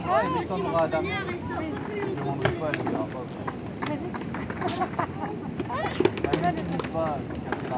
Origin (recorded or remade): recorded